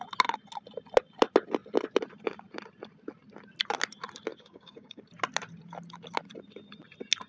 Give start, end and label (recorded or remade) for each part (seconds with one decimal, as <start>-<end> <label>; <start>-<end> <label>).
0.0-4.3 recorded; 4.3-5.0 remade; 5.0-7.3 recorded